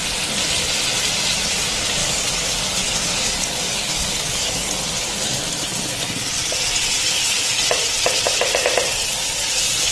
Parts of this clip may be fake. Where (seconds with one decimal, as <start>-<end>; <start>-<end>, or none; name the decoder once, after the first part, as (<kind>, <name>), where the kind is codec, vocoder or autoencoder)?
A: 2.0-4.7 (codec, DAC)